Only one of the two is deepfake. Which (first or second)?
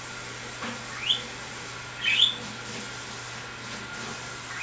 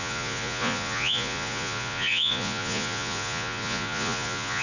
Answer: second